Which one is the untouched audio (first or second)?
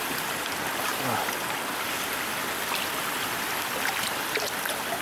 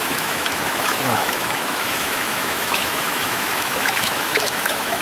first